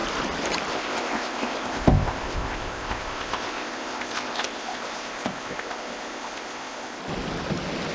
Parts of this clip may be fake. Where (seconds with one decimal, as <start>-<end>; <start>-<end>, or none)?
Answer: 0.7-7.0